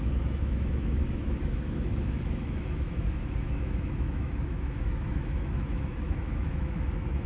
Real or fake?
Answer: fake